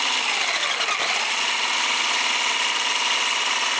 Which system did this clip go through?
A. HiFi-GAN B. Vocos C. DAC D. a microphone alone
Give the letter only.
D